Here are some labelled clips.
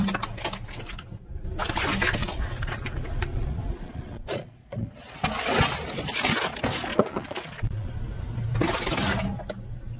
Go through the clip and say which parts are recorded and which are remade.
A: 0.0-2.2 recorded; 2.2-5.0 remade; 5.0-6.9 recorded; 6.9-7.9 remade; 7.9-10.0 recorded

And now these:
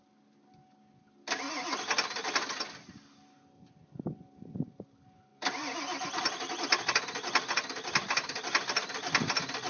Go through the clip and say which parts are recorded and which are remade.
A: 0.0-9.7 recorded

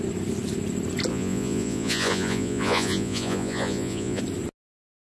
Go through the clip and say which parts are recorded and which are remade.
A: 0.0-1.1 recorded; 1.1-4.2 remade; 4.2-5.1 recorded